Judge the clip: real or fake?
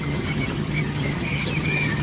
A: fake